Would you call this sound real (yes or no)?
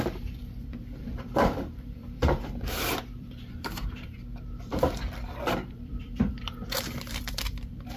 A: no